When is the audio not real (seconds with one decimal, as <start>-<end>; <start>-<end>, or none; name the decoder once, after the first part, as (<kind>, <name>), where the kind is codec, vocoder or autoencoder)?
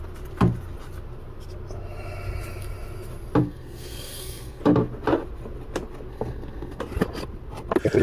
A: 3.4-4.6 (codec, SNAC); 6.1-6.8